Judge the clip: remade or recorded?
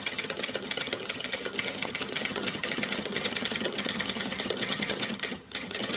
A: remade